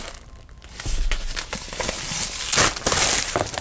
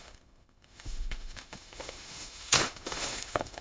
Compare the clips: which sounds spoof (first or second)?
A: second